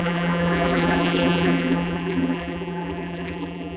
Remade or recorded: remade